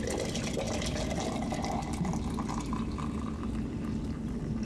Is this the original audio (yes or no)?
yes